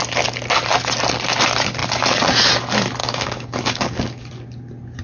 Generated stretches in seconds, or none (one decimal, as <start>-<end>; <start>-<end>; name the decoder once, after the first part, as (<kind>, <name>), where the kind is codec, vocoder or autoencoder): 3.0-4.3 (codec, DAC)